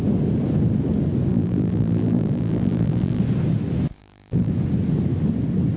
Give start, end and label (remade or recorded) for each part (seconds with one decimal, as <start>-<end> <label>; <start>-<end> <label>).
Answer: 0.0-1.3 recorded; 1.3-3.2 remade; 3.2-4.0 recorded; 4.0-4.5 remade; 4.5-5.8 recorded